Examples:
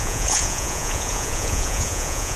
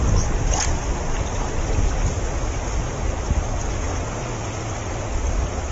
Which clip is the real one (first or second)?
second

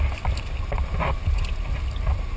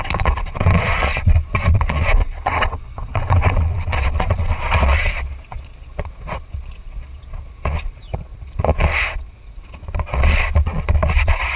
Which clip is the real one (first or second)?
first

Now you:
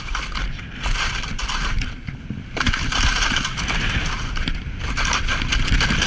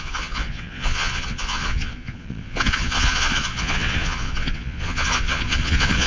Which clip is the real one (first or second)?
first